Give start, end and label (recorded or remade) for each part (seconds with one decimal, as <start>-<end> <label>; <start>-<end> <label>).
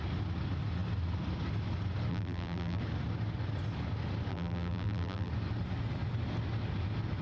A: 0.0-2.1 recorded; 2.1-2.8 remade; 2.8-4.3 recorded; 4.3-5.3 remade; 5.3-7.2 recorded